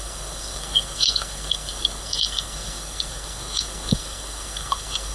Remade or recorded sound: remade